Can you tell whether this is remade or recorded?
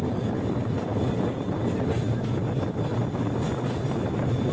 recorded